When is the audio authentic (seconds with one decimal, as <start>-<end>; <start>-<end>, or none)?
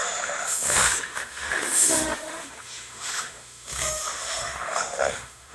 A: none